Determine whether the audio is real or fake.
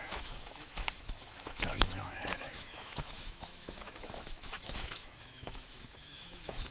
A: fake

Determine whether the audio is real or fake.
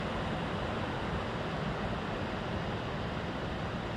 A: real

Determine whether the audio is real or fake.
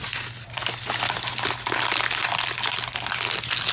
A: real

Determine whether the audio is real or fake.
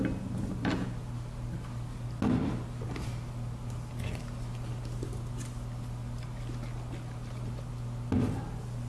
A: real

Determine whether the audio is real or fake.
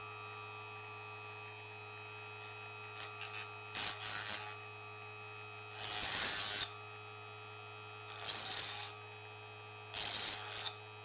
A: real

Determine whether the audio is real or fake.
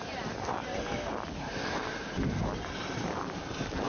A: fake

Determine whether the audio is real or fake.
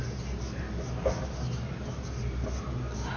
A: real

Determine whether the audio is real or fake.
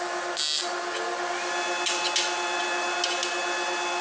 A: real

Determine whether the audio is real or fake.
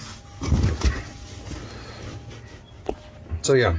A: real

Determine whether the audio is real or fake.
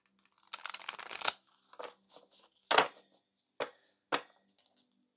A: real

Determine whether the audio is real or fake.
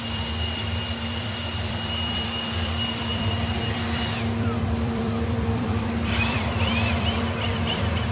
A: fake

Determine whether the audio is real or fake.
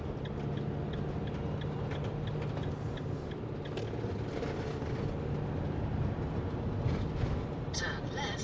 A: real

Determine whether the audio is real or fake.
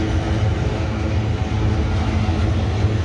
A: real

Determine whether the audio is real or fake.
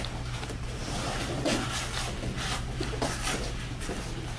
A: real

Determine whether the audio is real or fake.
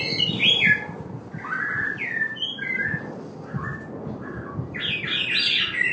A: real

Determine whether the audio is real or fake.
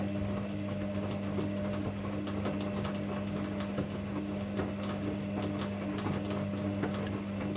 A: real